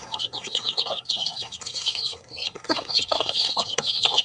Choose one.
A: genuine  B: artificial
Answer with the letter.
B